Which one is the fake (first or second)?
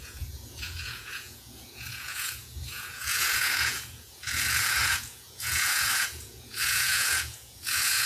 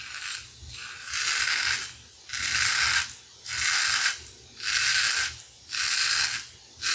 first